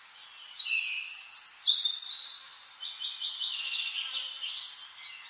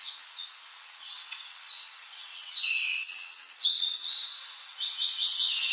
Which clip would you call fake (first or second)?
second